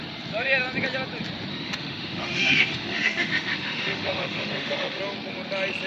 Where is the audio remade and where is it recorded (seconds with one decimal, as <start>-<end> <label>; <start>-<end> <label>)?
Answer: 0.0-1.5 recorded; 1.5-5.0 remade; 5.0-5.9 recorded

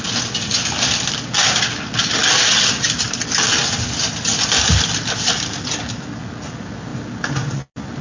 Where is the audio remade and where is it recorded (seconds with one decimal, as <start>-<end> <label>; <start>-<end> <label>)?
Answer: 0.0-8.0 recorded

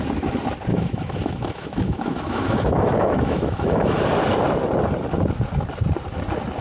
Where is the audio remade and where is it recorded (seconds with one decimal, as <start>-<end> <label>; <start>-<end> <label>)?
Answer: 0.0-0.7 recorded; 0.7-4.0 remade; 4.0-6.6 recorded